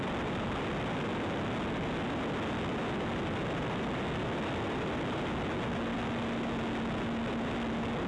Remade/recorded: recorded